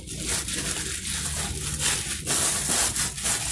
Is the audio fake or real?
real